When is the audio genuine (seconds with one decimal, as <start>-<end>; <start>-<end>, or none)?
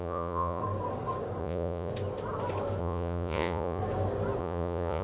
0.6-1.4; 1.9-2.8; 3.8-4.4